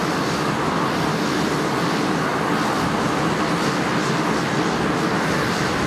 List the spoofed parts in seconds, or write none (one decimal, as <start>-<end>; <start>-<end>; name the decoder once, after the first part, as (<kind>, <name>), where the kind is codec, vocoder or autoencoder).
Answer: none